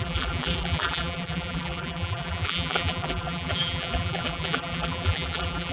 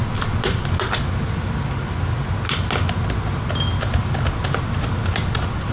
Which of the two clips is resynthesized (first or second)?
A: first